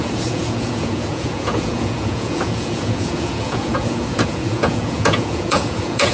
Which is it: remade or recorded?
remade